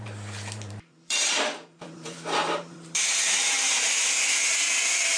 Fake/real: fake